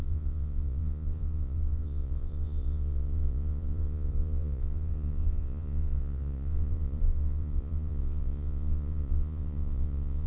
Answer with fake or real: fake